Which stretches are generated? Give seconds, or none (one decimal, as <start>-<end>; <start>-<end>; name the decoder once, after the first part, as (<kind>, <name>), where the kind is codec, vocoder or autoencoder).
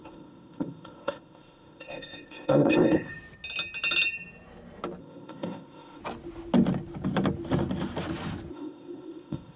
0.0-3.1 (codec, ZipCodec); 5.0-6.0; 8.5-9.6